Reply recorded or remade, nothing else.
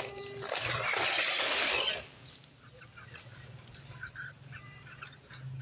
remade